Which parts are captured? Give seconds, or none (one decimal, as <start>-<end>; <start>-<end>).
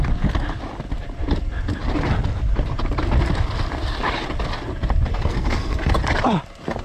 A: 0.0-5.1; 5.9-6.8